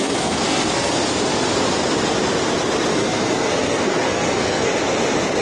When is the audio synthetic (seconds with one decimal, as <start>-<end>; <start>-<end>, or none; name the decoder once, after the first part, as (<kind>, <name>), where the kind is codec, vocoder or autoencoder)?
0.0-0.9 (codec, SNAC); 2.9-4.7